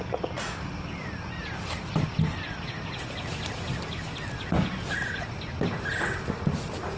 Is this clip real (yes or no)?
yes